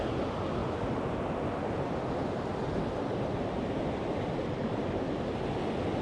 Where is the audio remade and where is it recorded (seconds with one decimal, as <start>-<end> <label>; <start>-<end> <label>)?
0.0-6.0 recorded